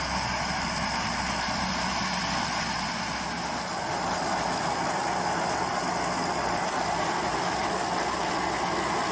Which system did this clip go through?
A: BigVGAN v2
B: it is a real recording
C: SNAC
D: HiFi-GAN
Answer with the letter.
B